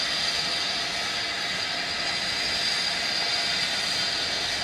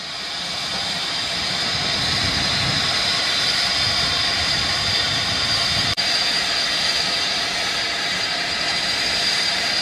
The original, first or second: first